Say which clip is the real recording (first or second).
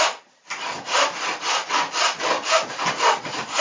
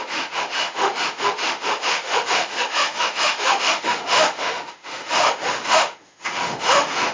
first